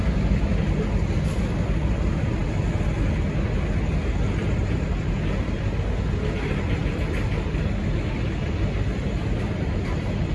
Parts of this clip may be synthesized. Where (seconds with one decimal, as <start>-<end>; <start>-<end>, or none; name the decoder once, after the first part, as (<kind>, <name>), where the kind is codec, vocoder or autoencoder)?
none